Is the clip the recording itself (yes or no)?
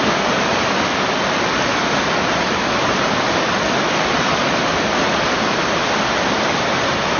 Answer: yes